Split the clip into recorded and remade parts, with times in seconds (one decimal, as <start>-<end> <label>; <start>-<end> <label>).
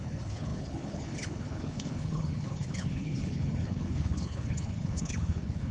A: 0.0-5.7 remade